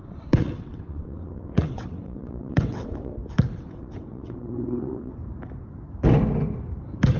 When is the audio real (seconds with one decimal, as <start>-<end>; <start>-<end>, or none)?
3.1-3.6; 5.2-7.2